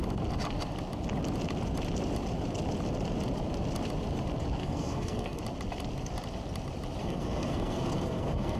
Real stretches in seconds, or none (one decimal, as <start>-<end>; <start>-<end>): 0.0-4.6; 5.4-7.0